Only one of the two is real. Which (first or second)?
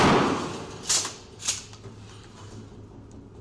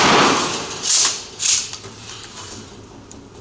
first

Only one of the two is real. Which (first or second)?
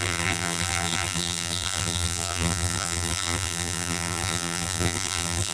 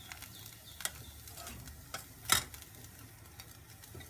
second